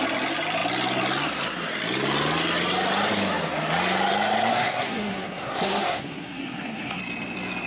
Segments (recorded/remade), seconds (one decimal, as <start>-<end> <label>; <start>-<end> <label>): 0.0-4.5 recorded; 4.5-7.0 remade; 7.0-7.7 recorded